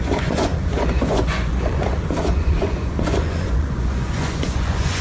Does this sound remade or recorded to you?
remade